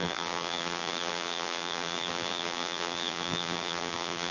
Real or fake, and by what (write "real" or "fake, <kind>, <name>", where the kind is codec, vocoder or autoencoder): fake, vocoder, BigVGAN v2